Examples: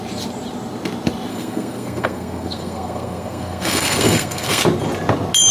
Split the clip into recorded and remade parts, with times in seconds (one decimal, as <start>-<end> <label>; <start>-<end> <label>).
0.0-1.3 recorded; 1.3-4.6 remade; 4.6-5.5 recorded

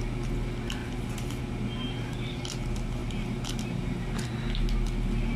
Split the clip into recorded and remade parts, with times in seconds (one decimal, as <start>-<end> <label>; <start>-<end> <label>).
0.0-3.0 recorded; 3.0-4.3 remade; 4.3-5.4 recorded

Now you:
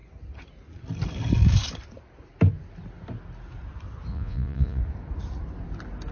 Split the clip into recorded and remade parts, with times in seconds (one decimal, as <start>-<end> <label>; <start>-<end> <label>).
0.0-4.1 recorded; 4.1-4.8 remade; 4.8-6.1 recorded

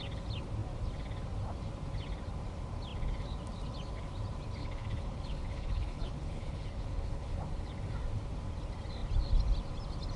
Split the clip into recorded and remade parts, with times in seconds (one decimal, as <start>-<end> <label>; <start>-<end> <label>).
0.0-4.6 recorded; 4.6-7.4 remade; 7.4-10.2 recorded